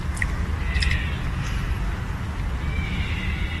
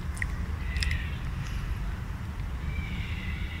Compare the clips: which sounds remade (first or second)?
second